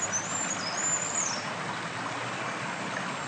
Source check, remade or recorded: recorded